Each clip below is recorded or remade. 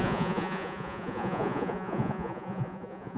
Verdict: remade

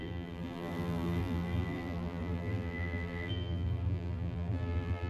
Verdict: remade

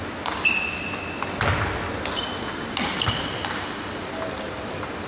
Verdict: recorded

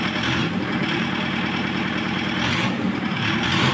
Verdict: remade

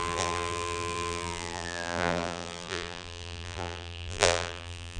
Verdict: remade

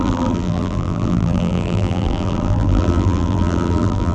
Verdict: remade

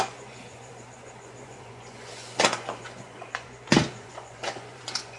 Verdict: remade